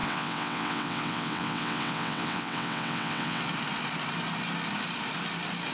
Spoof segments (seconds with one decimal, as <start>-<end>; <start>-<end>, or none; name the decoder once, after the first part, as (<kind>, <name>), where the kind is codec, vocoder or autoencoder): 0.0-3.4 (vocoder, WaveNeXt)